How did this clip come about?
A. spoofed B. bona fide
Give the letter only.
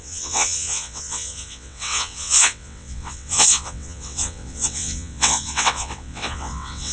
A